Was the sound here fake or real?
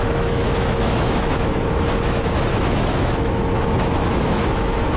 fake